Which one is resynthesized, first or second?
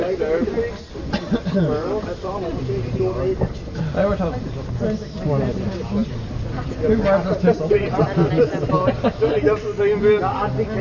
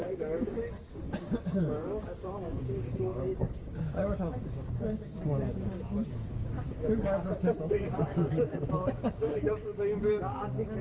second